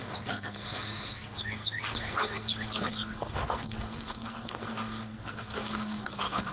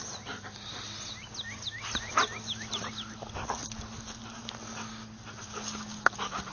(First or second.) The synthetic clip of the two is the first